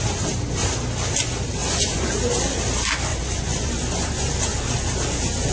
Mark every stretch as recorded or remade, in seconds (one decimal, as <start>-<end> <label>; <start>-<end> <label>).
0.0-1.6 recorded; 1.6-2.1 remade; 2.1-3.1 recorded; 3.1-4.4 remade; 4.4-5.5 recorded